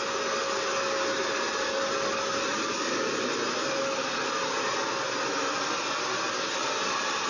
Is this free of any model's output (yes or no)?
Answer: yes